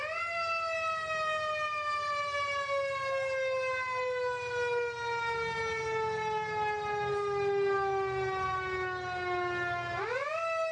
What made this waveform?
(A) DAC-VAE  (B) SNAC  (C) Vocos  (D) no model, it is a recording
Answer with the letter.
D